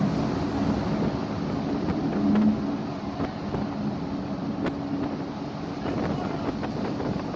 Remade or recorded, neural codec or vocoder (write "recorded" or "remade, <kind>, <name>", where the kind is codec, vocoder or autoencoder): recorded